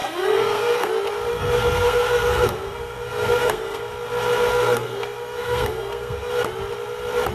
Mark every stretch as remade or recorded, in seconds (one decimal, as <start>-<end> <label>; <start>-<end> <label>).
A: 0.0-0.9 remade; 0.9-1.3 recorded; 1.3-3.9 remade; 3.9-4.5 recorded; 4.5-6.3 remade; 6.3-7.3 recorded

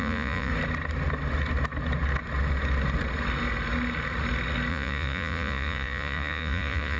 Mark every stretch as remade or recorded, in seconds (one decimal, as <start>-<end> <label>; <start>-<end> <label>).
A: 0.0-0.5 remade; 0.5-4.7 recorded; 4.7-7.0 remade

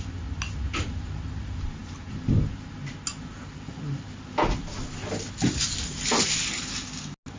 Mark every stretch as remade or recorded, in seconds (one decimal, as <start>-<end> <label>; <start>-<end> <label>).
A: 0.0-7.4 recorded

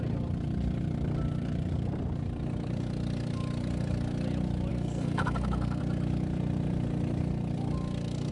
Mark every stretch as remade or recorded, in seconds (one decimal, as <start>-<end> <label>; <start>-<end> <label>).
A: 0.0-4.7 recorded; 4.7-5.8 remade; 5.8-8.3 recorded